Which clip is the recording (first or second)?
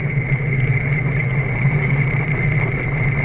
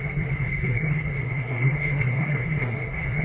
first